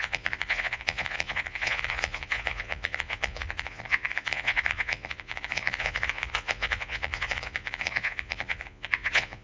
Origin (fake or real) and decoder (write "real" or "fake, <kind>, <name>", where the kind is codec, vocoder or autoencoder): fake, vocoder, Vocos